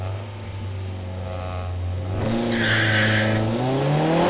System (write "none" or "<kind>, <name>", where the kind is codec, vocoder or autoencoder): none